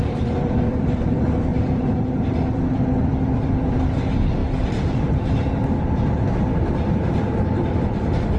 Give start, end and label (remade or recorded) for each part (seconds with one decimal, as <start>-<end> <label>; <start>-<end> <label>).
0.0-1.5 remade; 1.5-2.1 recorded; 2.1-8.4 remade